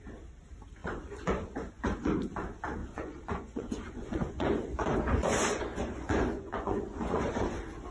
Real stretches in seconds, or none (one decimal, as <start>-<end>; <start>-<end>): 0.0-0.8; 2.1-2.8; 7.5-7.9